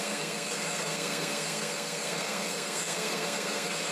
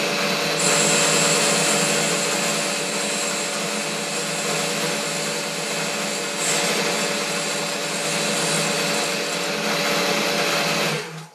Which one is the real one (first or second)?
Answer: second